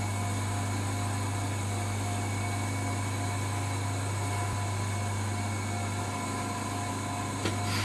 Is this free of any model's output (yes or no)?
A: yes